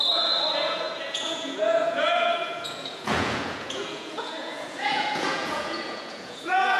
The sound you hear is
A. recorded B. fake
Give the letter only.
B